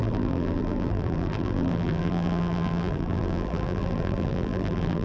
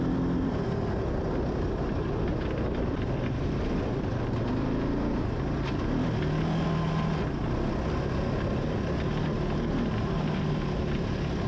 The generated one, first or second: first